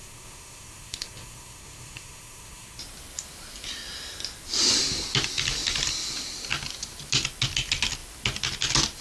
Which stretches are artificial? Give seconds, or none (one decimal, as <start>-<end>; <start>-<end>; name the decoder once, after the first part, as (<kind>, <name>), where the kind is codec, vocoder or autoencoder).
0.0-2.8 (codec, SNAC)